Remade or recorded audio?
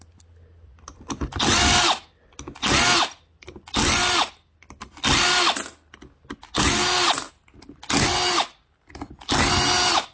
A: recorded